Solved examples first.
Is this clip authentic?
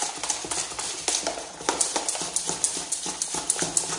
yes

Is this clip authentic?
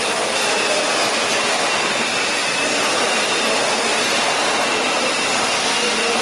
yes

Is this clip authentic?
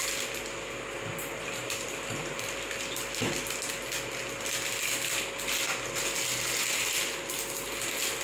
yes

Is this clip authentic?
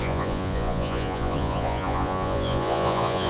no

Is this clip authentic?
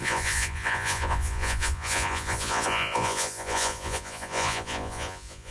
no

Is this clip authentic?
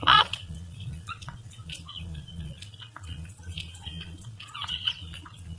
no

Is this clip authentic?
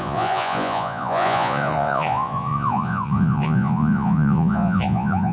no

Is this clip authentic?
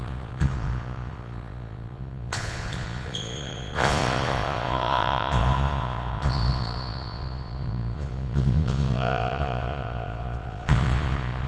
no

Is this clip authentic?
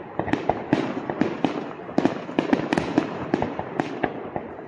yes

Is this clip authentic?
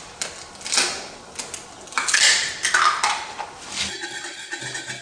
yes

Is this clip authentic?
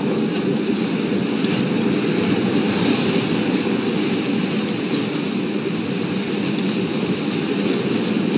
yes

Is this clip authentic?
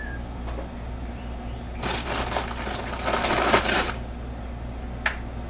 yes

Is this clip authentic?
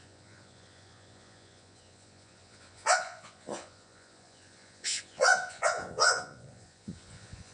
no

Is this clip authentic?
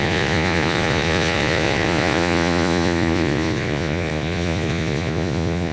no